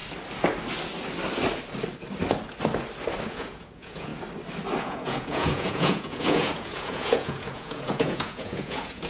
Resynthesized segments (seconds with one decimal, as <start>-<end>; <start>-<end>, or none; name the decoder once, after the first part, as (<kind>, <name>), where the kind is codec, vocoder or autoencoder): 3.3-4.1 (vocoder, Vocos); 4.8-9.1